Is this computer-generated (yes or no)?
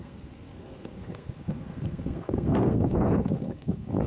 yes